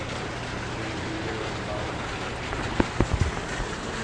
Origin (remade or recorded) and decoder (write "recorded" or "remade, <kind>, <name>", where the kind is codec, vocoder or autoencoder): recorded